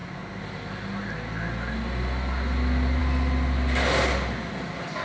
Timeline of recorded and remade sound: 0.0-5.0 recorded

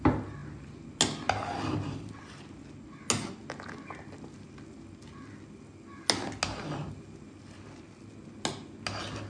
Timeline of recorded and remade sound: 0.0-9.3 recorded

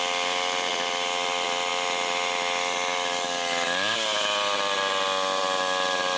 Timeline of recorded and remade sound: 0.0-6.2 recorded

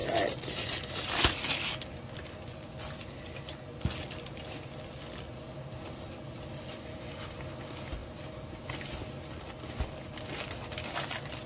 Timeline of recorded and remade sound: 0.0-11.5 recorded